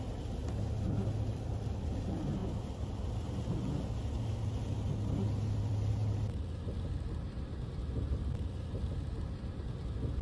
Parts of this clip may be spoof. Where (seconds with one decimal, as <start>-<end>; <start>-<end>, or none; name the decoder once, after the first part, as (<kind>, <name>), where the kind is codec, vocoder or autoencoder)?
0.0-0.4 (vocoder, BigVGAN v2); 1.3-2.4; 5.5-6.0; 6.6-10.2